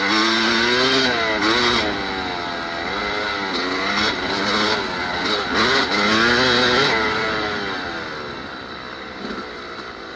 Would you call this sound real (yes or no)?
yes